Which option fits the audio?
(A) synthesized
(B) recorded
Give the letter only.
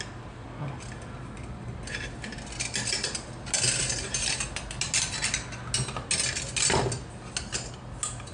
B